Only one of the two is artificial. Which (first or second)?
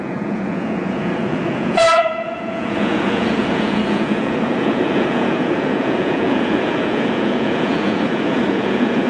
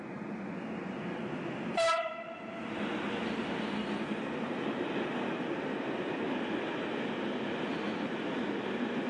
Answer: first